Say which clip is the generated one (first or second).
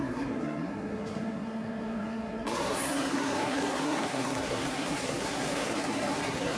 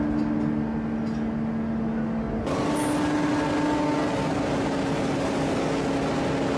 first